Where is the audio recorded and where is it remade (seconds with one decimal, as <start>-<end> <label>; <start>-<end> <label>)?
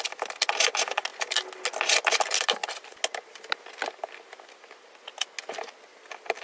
0.0-6.4 recorded